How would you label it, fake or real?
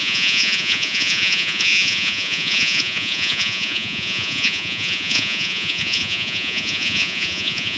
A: fake